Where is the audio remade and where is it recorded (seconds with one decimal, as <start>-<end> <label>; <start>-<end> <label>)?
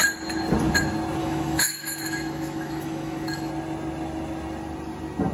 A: 0.0-1.2 recorded; 1.2-3.5 remade; 3.5-5.3 recorded